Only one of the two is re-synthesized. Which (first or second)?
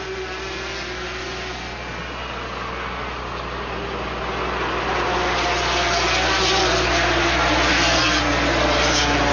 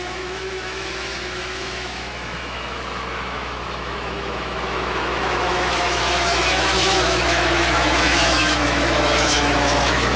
second